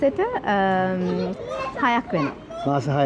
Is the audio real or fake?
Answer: real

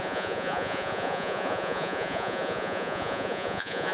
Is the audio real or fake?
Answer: fake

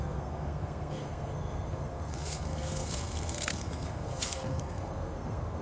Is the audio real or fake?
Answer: fake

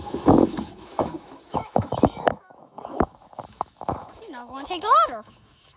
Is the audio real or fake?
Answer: fake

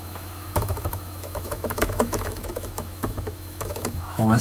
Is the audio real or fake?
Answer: fake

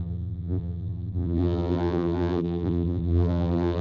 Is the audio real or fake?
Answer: fake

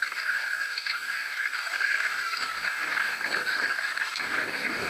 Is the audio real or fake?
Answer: fake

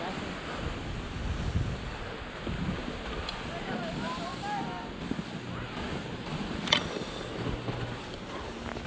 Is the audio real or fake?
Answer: real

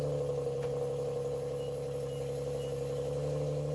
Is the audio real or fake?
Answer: real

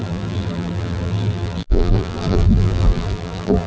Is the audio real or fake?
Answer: fake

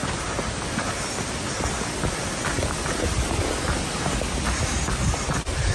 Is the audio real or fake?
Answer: real